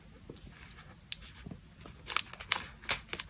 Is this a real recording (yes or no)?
yes